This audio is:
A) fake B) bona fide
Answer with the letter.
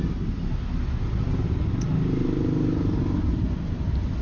B